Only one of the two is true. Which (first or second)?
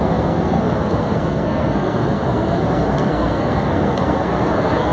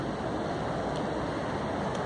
second